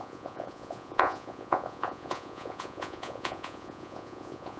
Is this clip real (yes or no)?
no